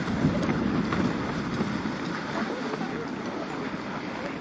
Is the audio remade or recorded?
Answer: recorded